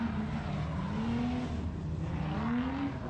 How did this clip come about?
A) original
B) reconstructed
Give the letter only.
A